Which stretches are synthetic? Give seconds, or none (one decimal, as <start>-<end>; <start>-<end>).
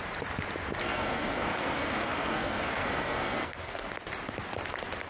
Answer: 0.8-3.9